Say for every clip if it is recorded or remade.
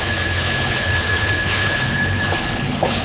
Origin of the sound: remade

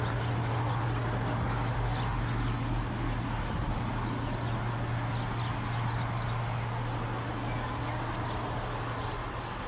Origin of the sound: recorded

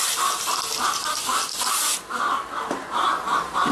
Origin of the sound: remade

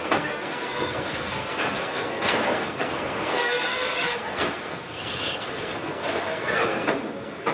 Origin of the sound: remade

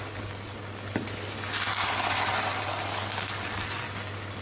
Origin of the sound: recorded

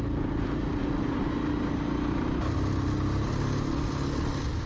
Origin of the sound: recorded